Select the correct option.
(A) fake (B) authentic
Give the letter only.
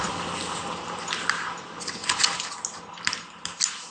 B